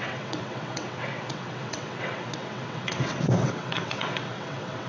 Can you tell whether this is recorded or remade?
remade